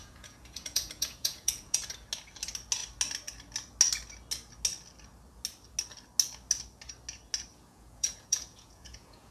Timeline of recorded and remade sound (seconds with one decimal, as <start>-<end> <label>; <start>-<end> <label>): 0.0-1.9 remade; 1.9-7.5 recorded; 7.5-9.3 remade